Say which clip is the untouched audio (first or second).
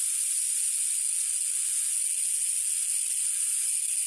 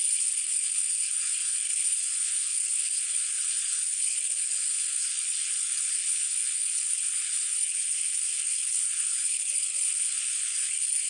first